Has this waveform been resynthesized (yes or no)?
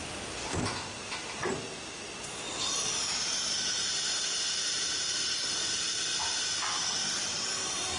no